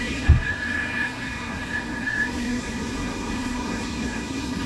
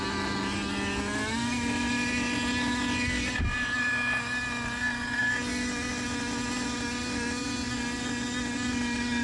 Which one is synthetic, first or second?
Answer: first